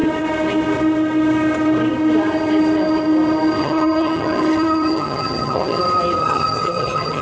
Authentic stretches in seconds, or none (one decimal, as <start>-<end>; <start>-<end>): 0.0-3.6; 5.8-6.2